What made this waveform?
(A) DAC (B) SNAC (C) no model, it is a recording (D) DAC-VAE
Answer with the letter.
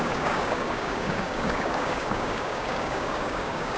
A